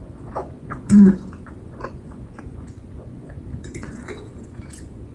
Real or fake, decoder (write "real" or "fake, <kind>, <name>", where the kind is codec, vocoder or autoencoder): fake, vocoder, Vocos